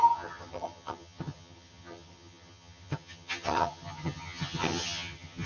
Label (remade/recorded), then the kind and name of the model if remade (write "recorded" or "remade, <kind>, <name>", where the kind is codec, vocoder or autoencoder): remade, vocoder, HiFi-GAN